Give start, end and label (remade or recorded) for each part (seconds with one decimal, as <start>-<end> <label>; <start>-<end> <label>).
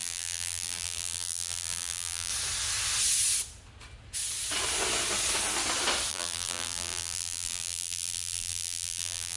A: 0.0-2.3 remade; 2.3-6.1 recorded; 6.1-9.4 remade